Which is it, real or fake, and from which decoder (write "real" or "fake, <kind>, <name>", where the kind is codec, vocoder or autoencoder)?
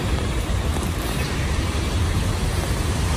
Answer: fake, vocoder, BigVGAN v2